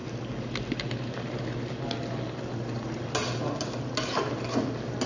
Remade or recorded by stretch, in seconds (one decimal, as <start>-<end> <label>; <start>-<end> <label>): 0.0-5.1 recorded